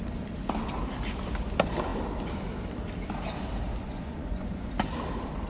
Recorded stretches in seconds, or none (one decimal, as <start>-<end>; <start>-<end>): 0.0-3.8; 4.7-5.5